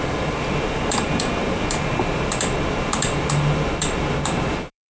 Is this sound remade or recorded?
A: remade